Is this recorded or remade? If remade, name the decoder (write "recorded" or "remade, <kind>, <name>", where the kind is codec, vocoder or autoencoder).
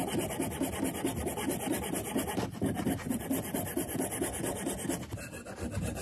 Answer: recorded